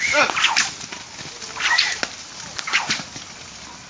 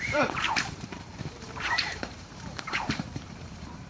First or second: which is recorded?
first